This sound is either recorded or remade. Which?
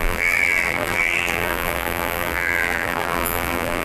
remade